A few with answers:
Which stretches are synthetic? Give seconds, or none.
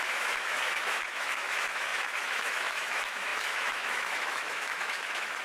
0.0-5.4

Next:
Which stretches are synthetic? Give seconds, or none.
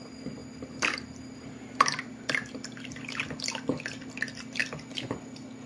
none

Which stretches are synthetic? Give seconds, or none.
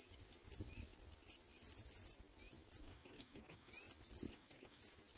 2.8-3.7; 4.3-4.8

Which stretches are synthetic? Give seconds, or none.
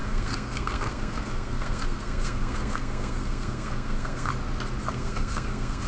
0.0-4.3; 4.9-5.9